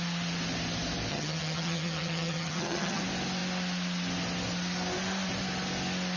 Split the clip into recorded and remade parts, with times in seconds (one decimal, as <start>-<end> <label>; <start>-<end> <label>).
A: 0.0-1.1 recorded; 1.1-3.0 remade; 3.0-6.2 recorded